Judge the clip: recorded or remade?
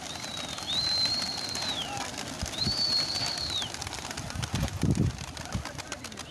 recorded